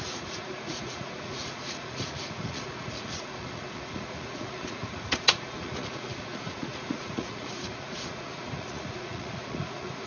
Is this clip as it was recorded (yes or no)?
no